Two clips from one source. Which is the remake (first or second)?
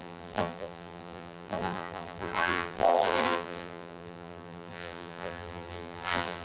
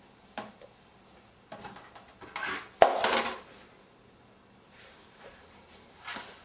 first